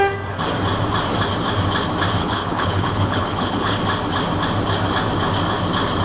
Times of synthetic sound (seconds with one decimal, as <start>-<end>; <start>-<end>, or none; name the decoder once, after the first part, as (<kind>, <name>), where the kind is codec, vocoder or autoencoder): 2.2-3.8 (codec, HILCodec)